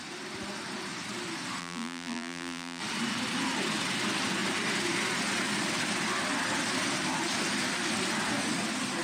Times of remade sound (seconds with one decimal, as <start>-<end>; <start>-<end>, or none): 1.6-2.8